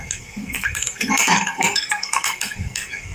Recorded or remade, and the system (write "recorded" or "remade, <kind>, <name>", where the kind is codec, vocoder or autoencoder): remade, codec, SNAC